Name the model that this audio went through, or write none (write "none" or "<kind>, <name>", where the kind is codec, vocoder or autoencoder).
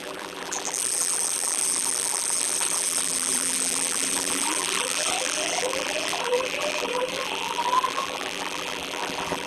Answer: vocoder, BigVGAN v2